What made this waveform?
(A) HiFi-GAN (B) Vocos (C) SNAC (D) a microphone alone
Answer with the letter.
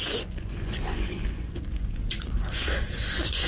B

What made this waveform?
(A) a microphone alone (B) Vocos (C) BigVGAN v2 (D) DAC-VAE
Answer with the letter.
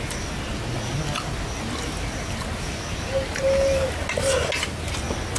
A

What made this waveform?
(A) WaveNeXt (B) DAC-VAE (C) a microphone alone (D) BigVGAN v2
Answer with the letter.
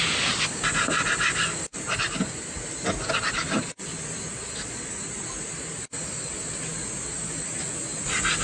C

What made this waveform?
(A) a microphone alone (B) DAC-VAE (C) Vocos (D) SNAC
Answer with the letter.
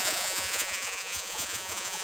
C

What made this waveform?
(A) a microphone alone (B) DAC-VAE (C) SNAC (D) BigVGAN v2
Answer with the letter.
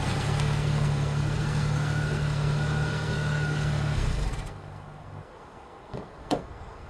C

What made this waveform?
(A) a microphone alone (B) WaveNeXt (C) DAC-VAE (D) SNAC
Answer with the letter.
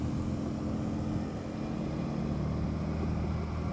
A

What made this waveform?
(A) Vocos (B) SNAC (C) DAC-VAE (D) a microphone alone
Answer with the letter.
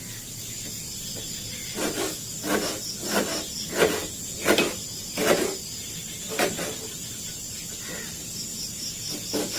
D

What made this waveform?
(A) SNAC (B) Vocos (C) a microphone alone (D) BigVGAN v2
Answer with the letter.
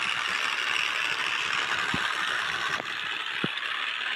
C